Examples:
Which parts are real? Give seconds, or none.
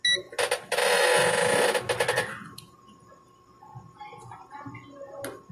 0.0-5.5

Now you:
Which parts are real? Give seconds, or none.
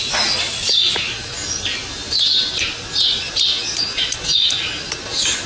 0.0-3.6; 4.2-5.5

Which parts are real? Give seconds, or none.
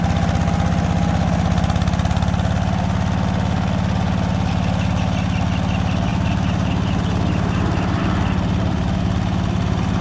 0.0-6.1; 8.0-10.0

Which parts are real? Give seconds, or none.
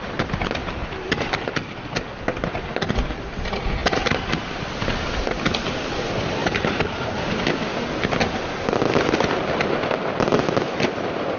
0.0-0.6; 1.1-6.4; 7.5-11.4